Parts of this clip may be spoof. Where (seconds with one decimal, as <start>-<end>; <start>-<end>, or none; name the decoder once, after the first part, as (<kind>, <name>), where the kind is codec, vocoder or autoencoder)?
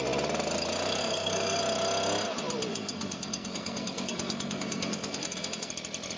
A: 1.0-1.6 (codec, SNAC); 2.7-5.7